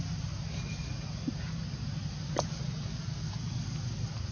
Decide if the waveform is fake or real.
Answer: real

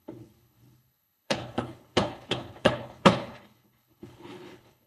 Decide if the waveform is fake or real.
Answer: fake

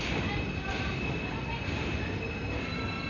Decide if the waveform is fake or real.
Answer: real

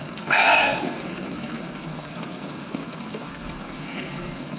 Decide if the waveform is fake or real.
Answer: fake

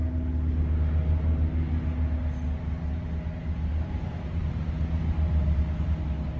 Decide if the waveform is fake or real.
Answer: real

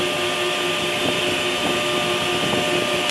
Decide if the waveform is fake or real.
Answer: real